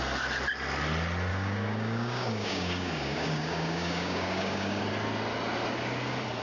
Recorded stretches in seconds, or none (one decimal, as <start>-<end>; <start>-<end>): 0.0-1.3; 4.8-6.4